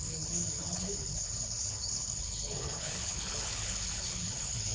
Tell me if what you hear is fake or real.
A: fake